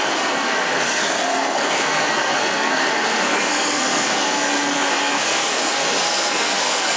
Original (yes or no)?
no